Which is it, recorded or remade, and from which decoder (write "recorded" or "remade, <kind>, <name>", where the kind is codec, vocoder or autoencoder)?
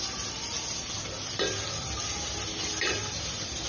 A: recorded